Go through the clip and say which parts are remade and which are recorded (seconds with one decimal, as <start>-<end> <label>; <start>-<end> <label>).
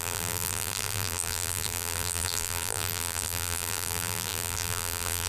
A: 0.0-5.3 remade